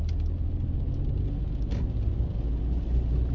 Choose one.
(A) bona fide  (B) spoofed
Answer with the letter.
A